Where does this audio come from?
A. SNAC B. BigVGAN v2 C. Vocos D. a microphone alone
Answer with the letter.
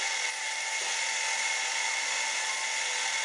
D